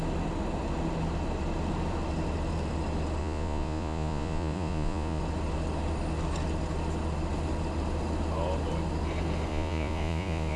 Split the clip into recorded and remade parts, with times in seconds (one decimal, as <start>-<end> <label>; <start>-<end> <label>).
0.0-3.2 recorded; 3.2-5.2 remade; 5.2-9.5 recorded; 9.5-10.6 remade